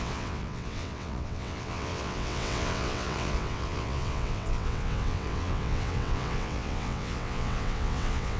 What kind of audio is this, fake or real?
fake